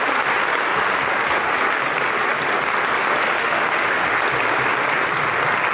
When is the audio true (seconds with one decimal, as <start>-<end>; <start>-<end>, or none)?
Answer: 0.0-3.4; 4.1-5.7